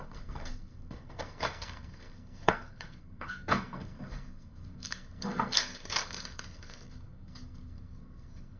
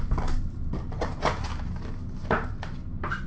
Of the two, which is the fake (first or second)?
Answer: first